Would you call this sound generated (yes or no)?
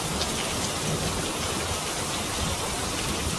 no